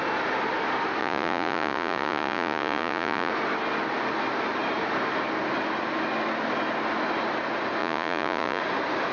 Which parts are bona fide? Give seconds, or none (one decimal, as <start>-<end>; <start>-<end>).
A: 0.0-1.0; 3.3-7.8; 8.6-9.1